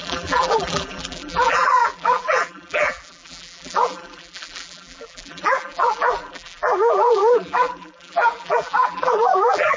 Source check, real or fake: fake